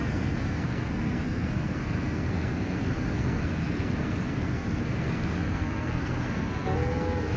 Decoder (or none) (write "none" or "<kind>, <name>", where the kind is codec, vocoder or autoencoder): codec, SNAC